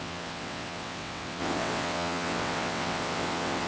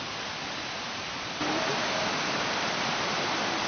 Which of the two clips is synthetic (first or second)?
first